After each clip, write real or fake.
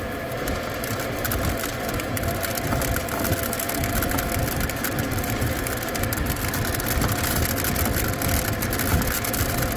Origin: real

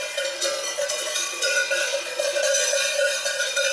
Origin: fake